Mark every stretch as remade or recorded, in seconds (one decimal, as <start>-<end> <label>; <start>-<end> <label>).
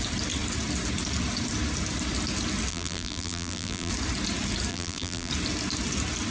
0.0-2.7 recorded; 2.7-3.9 remade; 3.9-4.7 recorded; 4.7-5.3 remade; 5.3-6.3 recorded